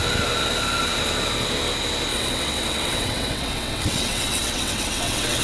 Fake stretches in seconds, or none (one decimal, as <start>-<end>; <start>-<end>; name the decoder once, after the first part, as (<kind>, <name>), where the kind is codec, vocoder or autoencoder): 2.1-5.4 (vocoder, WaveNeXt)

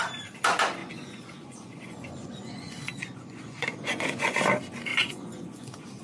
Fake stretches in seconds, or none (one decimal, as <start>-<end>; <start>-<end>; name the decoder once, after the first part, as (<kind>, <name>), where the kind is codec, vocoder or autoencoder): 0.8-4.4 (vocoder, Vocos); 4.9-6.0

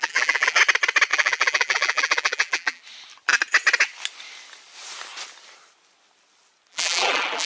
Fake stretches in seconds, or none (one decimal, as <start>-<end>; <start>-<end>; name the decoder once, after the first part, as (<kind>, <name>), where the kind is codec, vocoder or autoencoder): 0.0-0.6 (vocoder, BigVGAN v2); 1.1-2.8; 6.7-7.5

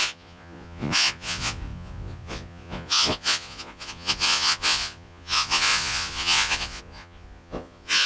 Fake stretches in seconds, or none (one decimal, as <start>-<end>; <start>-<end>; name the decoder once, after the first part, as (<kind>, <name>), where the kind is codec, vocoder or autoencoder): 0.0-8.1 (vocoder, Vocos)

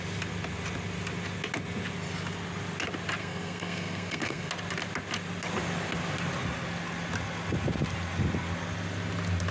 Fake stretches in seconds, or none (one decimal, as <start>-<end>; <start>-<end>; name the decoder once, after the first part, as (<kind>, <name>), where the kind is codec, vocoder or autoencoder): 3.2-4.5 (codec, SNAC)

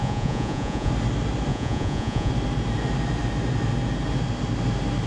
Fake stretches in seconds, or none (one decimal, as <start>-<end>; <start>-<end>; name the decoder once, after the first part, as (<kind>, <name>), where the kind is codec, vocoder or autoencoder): 0.0-0.9 (vocoder, Vocos); 1.5-2.3

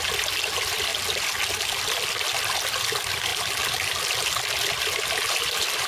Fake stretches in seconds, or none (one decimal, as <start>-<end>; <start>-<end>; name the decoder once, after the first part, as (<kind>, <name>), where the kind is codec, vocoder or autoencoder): none